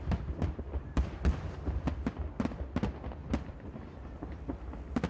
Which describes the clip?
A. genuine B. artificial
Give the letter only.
A